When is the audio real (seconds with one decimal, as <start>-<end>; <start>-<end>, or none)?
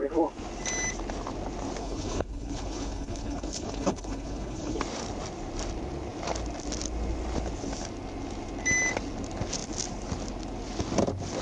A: 0.0-1.8; 4.8-11.4